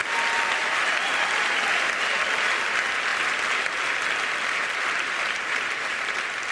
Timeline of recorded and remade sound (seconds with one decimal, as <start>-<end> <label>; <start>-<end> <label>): 0.0-1.1 recorded; 1.1-2.0 remade; 2.0-6.5 recorded